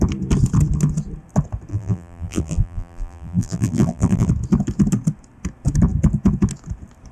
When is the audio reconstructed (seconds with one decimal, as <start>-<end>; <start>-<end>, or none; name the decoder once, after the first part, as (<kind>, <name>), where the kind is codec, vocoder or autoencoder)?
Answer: 1.7-4.3 (vocoder, BigVGAN v2)